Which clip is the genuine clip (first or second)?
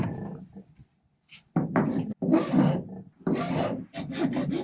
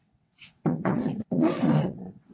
first